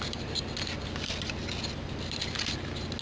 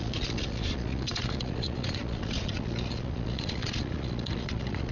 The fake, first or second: second